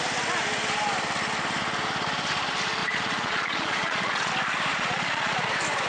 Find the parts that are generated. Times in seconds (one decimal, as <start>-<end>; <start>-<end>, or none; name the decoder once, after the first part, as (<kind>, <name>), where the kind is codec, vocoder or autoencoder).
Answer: 2.8-4.3 (vocoder, Vocos); 4.7-5.5